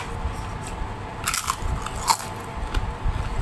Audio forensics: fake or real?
real